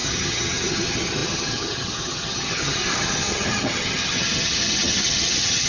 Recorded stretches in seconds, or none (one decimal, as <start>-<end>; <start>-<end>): none